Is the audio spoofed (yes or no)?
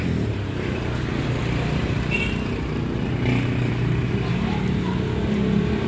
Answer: no